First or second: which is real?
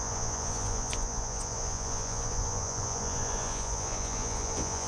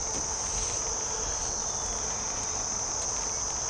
second